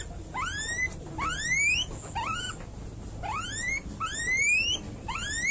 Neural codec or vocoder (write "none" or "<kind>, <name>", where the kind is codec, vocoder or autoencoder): none